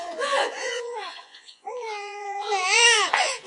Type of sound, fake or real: fake